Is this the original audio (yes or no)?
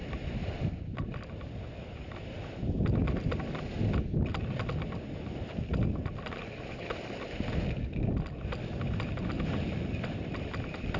yes